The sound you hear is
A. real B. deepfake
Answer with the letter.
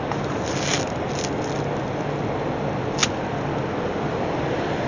A